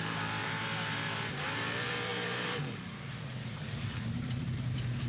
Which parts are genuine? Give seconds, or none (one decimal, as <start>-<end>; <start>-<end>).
none